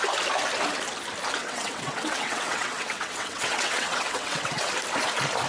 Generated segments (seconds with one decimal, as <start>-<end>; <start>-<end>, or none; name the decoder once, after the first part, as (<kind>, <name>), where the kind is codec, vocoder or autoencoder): 1.4-4.7 (vocoder, WaveNeXt)